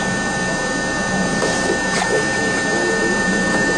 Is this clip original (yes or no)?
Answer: yes